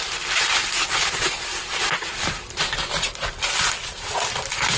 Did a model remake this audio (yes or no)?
no